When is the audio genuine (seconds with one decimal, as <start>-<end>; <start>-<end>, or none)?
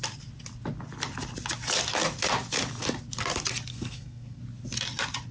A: 0.0-3.7; 4.4-5.3